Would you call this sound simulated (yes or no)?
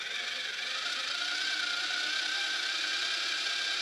no